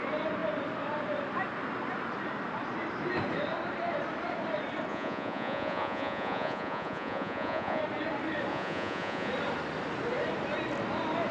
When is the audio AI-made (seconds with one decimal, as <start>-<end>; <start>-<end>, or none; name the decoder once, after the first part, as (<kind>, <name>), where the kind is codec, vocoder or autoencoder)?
4.9-7.8 (vocoder, Vocos); 8.5-9.3